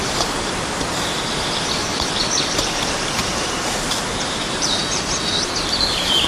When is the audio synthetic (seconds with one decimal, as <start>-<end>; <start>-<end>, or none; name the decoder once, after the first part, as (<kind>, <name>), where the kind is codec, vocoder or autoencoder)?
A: 3.2-5.1 (vocoder, BigVGAN v2)